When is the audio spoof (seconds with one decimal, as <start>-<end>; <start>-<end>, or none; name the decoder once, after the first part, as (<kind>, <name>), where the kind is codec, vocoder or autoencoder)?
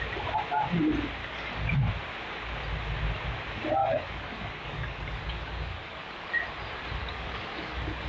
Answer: 1.2-1.9 (codec, DAC); 3.8-6.3; 7.0-8.1